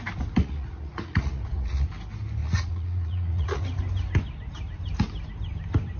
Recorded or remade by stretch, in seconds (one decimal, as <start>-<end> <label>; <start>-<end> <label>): 0.0-0.4 recorded; 0.4-1.9 remade; 1.9-2.4 recorded; 2.4-3.6 remade; 3.6-6.0 recorded